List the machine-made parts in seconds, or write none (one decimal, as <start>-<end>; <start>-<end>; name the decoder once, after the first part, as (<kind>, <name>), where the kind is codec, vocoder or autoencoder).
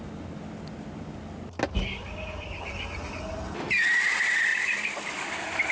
4.5-5.1 (vocoder, BigVGAN v2)